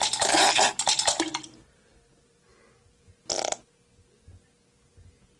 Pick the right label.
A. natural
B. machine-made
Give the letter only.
A